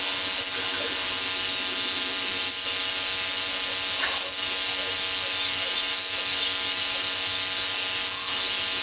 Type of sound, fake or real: real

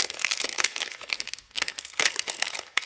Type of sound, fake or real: fake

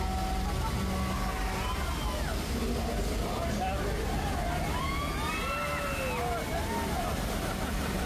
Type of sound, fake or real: real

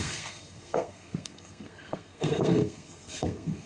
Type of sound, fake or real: fake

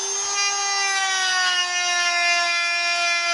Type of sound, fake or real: real